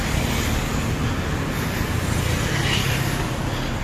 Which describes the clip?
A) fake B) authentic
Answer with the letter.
B